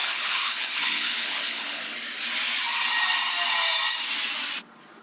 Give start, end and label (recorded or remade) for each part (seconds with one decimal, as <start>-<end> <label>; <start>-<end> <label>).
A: 0.0-1.8 remade; 1.8-5.0 recorded